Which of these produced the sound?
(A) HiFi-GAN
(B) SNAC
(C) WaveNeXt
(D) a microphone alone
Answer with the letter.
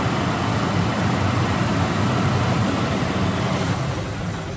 D